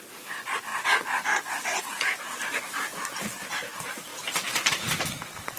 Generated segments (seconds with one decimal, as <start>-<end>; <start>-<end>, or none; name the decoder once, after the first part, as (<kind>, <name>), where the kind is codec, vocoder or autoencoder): 0.0-4.1 (vocoder, BigVGAN v2); 4.7-5.6